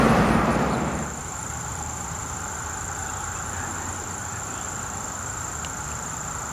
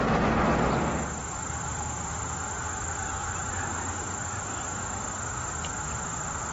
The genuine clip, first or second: second